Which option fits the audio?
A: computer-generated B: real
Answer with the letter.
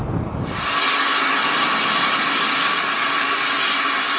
B